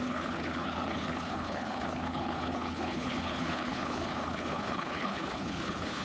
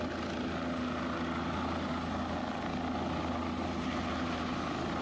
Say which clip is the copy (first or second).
first